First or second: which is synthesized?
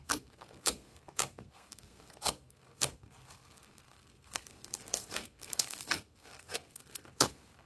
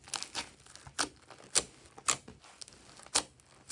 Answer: first